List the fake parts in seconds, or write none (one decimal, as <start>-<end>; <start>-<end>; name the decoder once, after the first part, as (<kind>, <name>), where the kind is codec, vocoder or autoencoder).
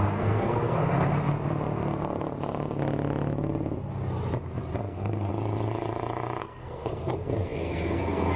0.0-0.8 (codec, SNAC); 4.8-5.3; 6.4-8.4